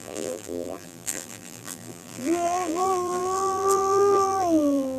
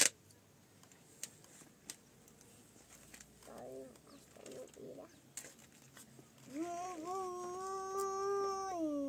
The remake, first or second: first